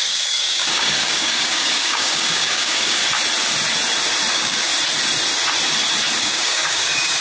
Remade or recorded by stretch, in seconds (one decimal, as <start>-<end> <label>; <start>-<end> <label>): 0.0-3.0 remade; 3.0-4.3 recorded; 4.3-4.7 remade; 4.7-6.2 recorded; 6.2-7.2 remade